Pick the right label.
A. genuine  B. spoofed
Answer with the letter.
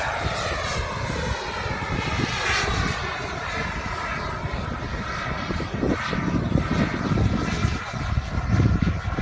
A